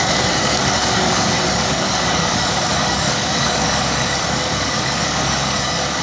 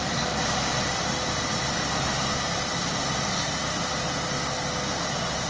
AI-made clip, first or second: first